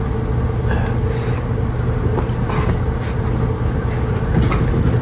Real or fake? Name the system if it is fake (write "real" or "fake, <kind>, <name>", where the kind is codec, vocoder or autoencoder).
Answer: real